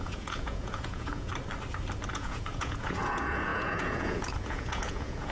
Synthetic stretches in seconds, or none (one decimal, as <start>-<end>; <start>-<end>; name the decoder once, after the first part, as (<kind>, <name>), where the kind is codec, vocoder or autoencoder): 0.0-1.3 (vocoder, Vocos); 2.1-5.3